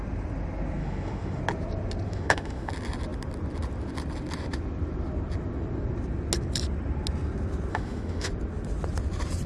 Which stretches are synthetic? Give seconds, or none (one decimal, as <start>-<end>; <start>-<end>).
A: 0.8-1.4; 2.1-2.7; 7.7-8.3